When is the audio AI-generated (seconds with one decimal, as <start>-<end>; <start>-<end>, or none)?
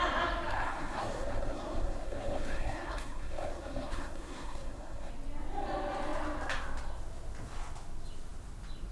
0.5-5.1